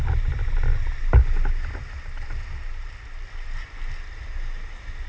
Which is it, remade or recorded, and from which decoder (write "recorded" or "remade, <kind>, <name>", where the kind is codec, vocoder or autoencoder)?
recorded